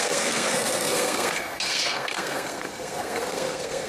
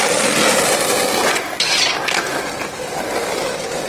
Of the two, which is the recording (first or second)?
second